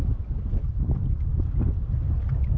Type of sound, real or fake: real